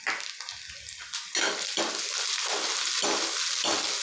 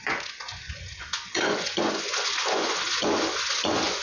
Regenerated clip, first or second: second